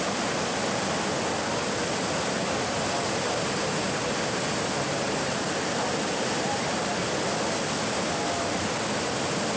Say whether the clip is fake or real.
real